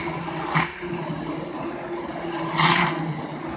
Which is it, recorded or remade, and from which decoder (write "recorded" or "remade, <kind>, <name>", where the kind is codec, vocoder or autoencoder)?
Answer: recorded